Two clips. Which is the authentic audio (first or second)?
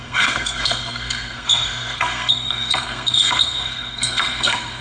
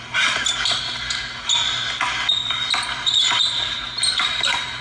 second